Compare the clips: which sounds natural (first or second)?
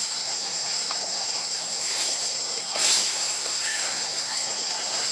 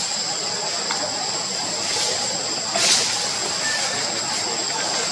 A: second